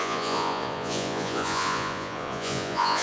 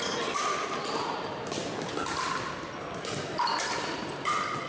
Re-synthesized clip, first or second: first